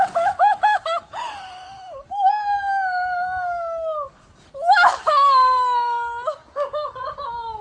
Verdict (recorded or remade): remade